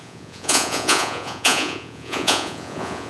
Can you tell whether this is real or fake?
fake